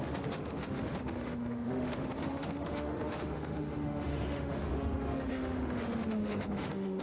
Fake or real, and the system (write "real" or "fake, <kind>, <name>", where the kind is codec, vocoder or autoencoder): fake, autoencoder, DAC-VAE